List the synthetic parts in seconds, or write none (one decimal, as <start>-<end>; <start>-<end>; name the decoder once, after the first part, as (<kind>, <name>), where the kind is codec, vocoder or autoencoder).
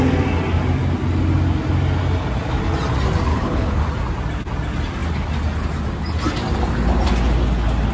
3.3-3.8 (codec, HILCodec)